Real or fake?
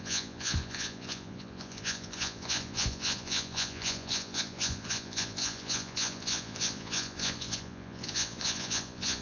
fake